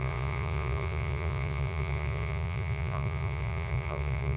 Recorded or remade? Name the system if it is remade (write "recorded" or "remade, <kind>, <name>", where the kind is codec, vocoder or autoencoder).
remade, vocoder, Vocos